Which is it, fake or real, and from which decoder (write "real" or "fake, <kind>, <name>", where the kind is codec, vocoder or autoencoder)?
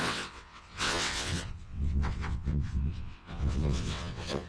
fake, vocoder, WaveNeXt